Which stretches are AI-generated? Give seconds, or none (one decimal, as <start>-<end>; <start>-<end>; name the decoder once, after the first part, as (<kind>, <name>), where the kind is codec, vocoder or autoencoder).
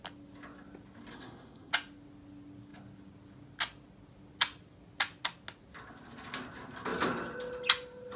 1.1-1.7 (codec, SNAC)